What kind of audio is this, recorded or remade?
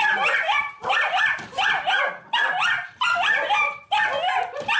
recorded